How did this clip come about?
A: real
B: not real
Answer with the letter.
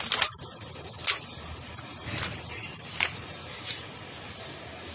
A